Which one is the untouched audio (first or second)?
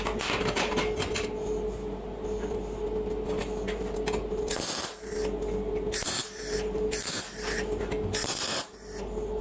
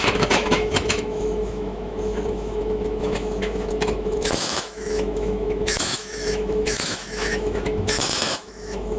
first